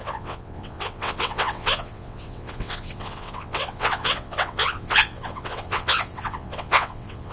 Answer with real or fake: fake